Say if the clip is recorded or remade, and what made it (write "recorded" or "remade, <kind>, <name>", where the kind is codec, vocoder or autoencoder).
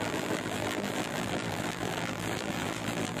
remade, vocoder, BigVGAN v2